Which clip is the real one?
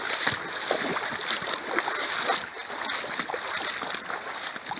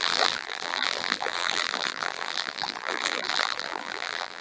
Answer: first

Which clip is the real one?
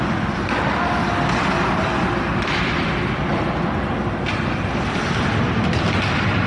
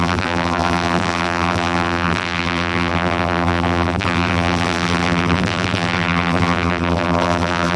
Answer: first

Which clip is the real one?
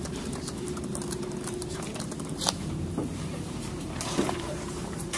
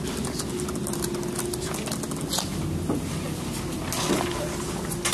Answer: second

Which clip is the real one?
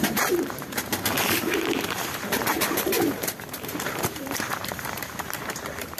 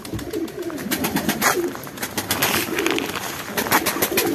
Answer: second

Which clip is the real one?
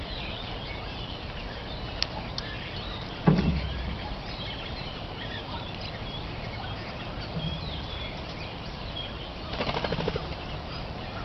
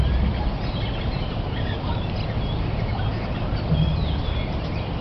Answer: second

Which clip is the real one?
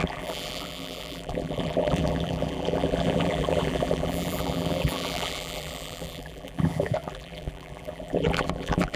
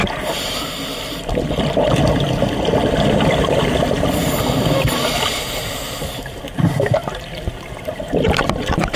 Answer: second